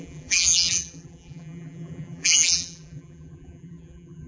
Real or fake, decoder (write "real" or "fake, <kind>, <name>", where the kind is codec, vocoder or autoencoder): fake, vocoder, BigVGAN v2